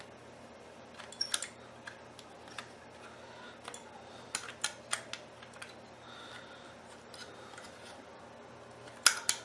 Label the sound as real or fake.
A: real